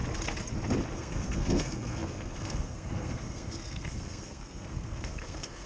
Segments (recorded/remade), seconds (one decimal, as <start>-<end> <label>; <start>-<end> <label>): 0.0-0.9 recorded; 0.9-5.7 remade